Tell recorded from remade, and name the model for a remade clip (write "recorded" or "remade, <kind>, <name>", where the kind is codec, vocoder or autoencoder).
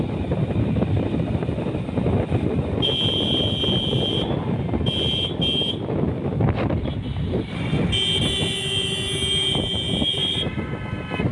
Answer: recorded